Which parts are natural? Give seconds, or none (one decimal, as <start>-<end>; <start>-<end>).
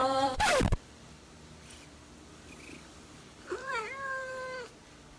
none